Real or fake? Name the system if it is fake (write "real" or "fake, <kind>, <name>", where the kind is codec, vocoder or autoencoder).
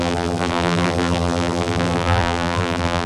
fake, vocoder, BigVGAN v2